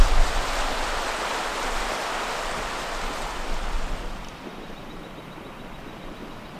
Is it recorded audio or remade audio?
recorded